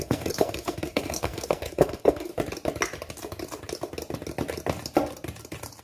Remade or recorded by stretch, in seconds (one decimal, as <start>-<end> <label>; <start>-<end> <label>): 0.0-2.3 remade; 2.3-5.8 recorded

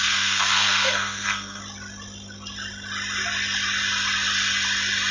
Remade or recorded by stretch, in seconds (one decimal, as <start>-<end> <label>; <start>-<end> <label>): 0.0-1.6 remade; 1.6-5.1 recorded

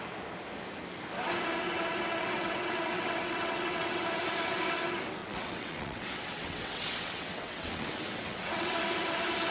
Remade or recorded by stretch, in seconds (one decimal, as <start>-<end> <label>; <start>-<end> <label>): 0.0-2.2 recorded; 2.2-4.0 remade; 4.0-5.2 recorded; 5.2-8.7 remade; 8.7-9.5 recorded

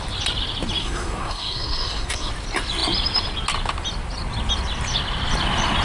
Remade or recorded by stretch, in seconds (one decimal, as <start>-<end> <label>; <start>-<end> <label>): 0.0-0.8 recorded; 0.8-2.3 remade; 2.3-5.8 recorded